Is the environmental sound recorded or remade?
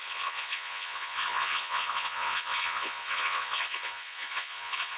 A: remade